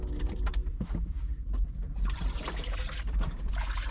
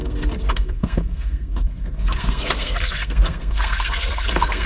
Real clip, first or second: first